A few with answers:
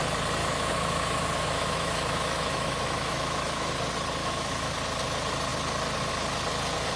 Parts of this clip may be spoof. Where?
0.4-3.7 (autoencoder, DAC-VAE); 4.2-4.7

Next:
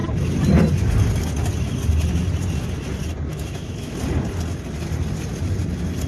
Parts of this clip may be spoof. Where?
3.3-4.0 (autoencoder, DAC-VAE)

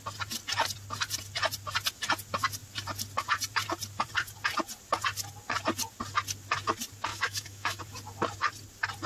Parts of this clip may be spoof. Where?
7.1-7.8 (autoencoder, DAC-VAE)

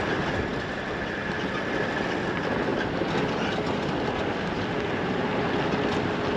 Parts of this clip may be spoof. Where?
none

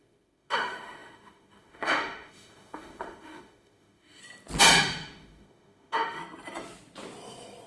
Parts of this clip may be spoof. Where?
0.0-4.2 (autoencoder, DAC-VAE); 4.8-6.2

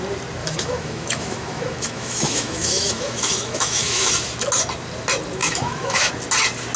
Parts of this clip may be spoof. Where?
0.4-4.1 (autoencoder, DAC-VAE); 5.4-6.1